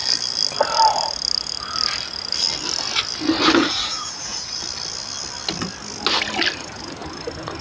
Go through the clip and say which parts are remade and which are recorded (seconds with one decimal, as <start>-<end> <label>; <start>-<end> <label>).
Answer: 0.0-3.6 recorded; 3.6-4.6 remade; 4.6-7.6 recorded

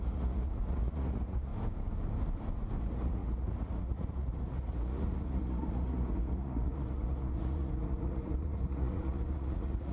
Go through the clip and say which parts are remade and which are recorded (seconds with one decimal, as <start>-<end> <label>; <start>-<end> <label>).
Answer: 0.0-1.5 remade; 1.5-2.8 recorded; 2.8-9.9 remade

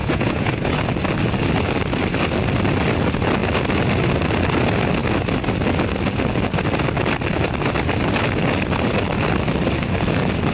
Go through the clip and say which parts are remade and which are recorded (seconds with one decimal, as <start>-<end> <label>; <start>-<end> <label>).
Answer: 0.0-0.8 remade; 0.8-10.5 recorded

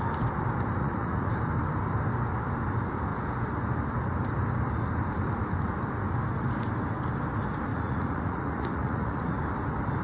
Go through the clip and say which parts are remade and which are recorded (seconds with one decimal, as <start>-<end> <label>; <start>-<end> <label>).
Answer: 0.0-0.8 recorded; 0.8-1.3 remade; 1.3-7.7 recorded; 7.7-9.4 remade; 9.4-10.0 recorded

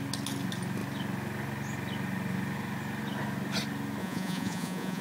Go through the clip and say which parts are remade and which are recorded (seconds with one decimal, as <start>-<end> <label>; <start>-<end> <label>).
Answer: 0.0-4.0 recorded; 4.0-5.0 remade